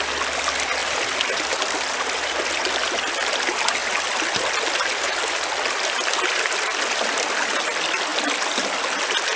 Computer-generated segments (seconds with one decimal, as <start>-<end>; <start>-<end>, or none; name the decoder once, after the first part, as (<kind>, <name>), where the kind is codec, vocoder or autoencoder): none